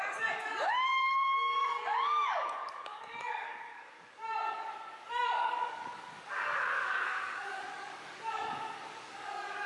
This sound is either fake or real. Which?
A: fake